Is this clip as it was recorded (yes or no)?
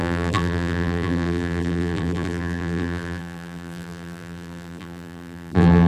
no